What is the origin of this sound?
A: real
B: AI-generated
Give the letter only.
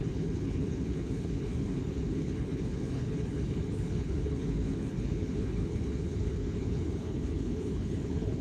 B